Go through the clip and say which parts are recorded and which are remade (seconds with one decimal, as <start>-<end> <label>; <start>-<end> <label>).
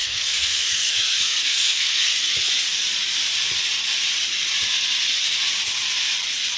0.0-2.1 remade; 2.1-6.6 recorded